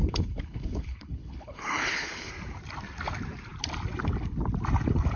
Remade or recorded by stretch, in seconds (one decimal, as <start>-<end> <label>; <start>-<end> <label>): 0.0-2.3 remade; 2.3-5.2 recorded